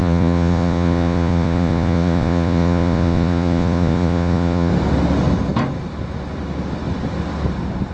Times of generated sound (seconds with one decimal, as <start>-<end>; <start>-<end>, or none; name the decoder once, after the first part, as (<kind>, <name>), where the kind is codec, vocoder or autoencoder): 0.0-4.7 (vocoder, Vocos)